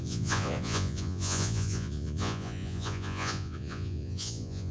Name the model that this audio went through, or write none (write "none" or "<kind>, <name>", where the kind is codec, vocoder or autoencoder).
vocoder, Vocos